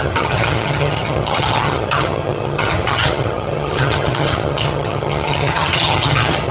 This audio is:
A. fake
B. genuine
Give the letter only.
A